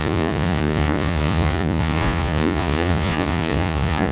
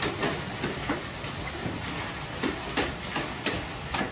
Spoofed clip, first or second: first